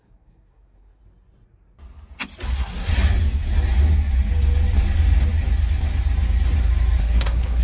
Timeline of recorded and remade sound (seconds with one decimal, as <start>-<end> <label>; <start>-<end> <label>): 0.0-1.0 remade; 1.0-2.5 recorded; 2.5-2.9 remade; 2.9-7.0 recorded; 7.0-7.6 remade

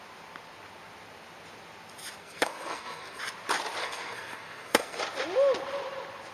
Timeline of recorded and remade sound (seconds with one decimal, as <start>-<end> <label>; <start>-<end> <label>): 0.0-2.2 recorded; 2.2-3.2 remade; 3.2-3.8 recorded; 3.8-5.0 remade; 5.0-6.3 recorded

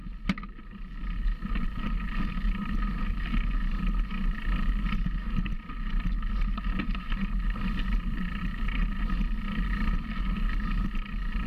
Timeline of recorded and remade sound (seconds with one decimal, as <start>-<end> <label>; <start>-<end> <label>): 0.0-11.5 recorded